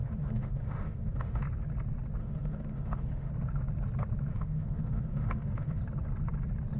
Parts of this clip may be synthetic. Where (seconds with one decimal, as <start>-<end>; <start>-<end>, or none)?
0.0-1.4; 2.2-3.3; 4.3-5.8